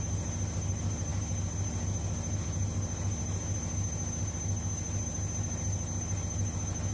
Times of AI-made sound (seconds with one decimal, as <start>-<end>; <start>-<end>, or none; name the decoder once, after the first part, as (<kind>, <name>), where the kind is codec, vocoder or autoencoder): none